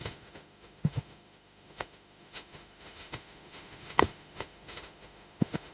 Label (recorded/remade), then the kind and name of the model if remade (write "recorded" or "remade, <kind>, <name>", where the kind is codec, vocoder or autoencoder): remade, autoencoder, DAC-VAE